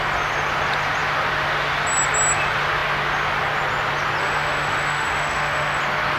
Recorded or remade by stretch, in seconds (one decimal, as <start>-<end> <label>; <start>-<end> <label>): 0.0-4.2 recorded; 4.2-5.8 remade; 5.8-6.2 recorded